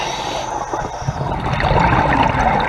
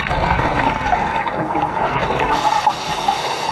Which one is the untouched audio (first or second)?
first